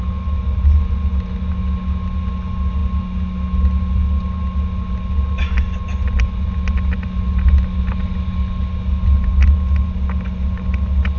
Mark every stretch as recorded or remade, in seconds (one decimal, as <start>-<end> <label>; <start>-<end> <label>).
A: 0.0-11.2 recorded